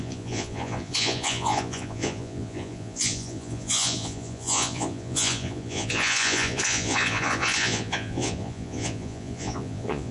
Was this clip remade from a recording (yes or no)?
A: yes